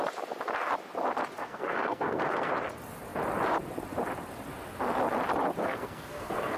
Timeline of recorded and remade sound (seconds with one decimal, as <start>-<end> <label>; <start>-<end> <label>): 0.0-1.4 recorded; 1.4-2.5 remade; 2.5-5.6 recorded; 5.6-6.6 remade